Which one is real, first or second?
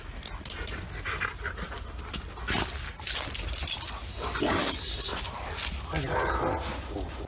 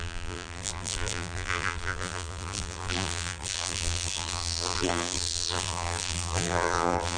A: first